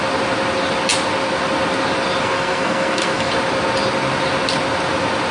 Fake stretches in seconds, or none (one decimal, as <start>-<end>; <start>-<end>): 2.2-3.3